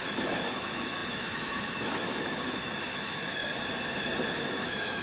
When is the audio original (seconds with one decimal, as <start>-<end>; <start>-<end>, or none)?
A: 3.4-4.4